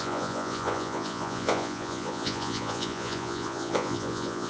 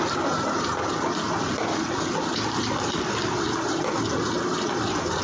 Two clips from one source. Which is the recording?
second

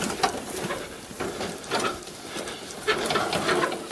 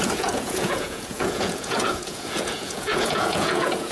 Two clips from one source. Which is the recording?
first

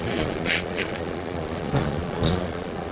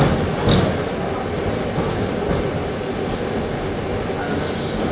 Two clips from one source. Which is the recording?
second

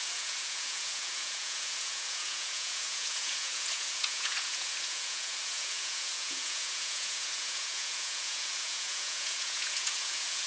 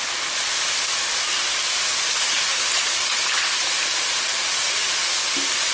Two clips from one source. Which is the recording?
second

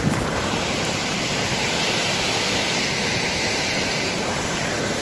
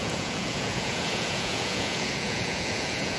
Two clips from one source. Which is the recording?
first